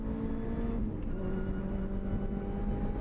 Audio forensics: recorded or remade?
recorded